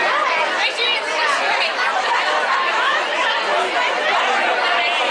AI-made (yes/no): no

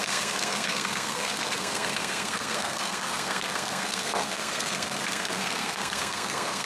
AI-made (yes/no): yes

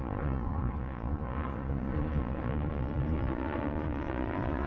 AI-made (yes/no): yes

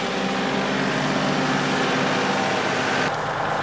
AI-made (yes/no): no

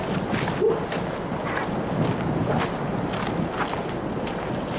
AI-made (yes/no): no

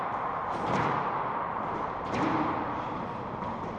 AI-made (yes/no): yes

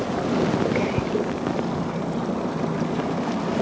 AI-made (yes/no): no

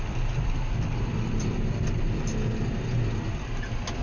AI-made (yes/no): no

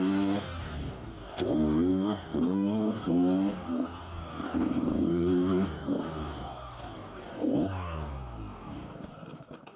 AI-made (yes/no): yes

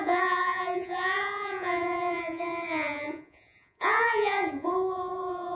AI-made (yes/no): yes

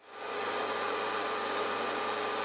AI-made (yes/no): yes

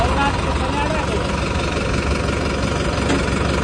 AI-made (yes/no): no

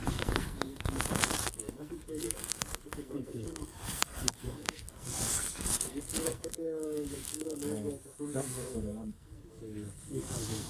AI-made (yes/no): yes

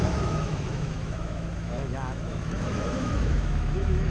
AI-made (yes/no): yes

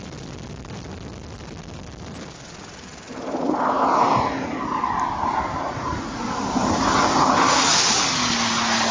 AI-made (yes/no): no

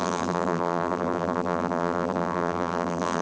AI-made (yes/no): yes